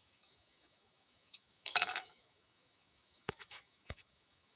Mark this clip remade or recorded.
remade